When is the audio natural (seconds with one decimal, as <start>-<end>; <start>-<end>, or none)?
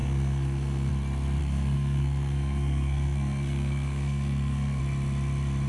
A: 0.9-1.4; 4.8-5.7